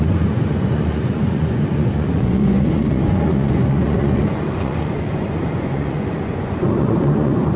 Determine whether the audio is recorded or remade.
remade